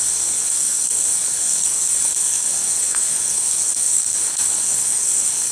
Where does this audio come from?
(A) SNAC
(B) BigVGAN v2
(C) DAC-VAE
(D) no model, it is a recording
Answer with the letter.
A